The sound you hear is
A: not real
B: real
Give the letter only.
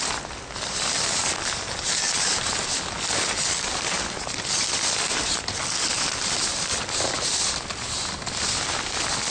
B